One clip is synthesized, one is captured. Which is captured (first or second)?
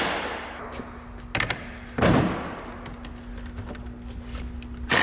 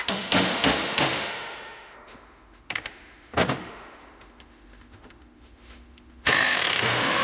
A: first